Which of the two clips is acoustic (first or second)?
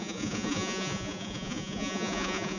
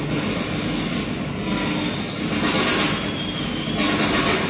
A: second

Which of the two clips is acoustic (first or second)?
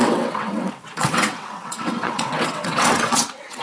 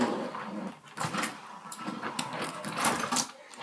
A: second